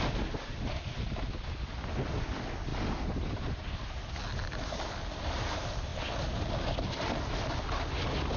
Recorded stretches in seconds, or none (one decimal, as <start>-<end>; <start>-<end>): 0.0-8.4